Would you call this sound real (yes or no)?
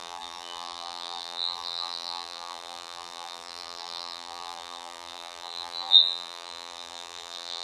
no